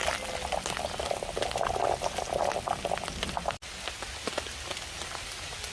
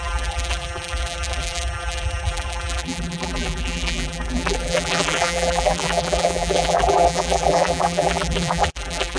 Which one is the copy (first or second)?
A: second